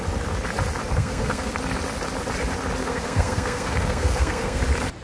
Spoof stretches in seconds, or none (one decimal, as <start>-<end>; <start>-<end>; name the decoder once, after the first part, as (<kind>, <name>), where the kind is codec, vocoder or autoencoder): 0.9-1.5 (codec, SNAC); 2.8-4.6